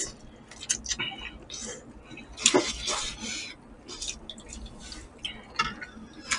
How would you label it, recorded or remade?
recorded